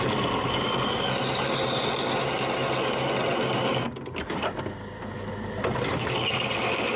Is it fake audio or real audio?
real